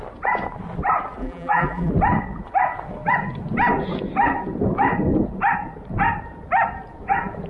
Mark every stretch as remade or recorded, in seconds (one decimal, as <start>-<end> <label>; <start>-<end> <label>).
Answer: 0.0-1.2 recorded; 1.2-1.9 remade; 1.9-7.5 recorded